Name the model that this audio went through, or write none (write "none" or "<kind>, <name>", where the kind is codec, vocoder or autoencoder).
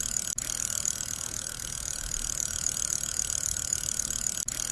none